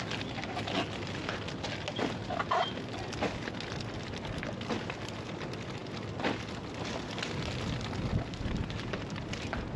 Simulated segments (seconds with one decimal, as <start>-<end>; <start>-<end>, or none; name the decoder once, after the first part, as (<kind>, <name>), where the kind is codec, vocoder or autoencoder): none